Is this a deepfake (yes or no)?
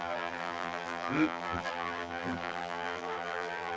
yes